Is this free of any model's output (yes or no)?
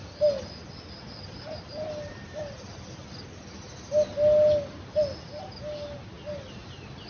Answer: yes